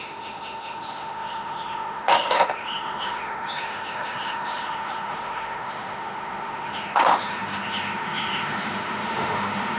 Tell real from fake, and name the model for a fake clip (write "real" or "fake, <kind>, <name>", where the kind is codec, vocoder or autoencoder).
fake, autoencoder, DAC-VAE